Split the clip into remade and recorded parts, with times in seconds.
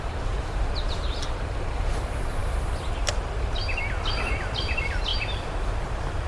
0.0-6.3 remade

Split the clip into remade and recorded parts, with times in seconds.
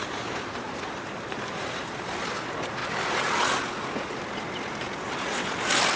0.0-2.8 remade; 2.8-6.0 recorded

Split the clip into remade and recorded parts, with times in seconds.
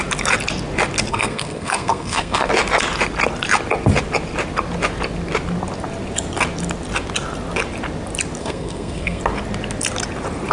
0.0-1.1 recorded; 1.1-2.5 remade; 2.5-8.4 recorded; 8.4-9.2 remade; 9.2-10.5 recorded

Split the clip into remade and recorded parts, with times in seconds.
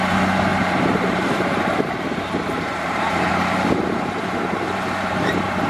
0.0-5.7 remade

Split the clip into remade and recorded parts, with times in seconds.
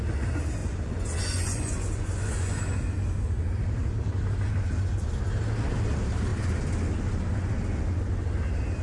0.0-0.6 recorded; 0.6-2.6 remade; 2.6-8.8 recorded